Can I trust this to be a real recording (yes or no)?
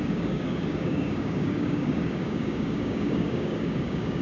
no